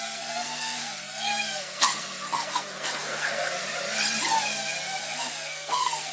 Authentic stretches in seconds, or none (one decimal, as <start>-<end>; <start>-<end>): 3.6-5.0